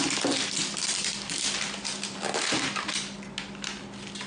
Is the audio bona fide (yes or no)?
yes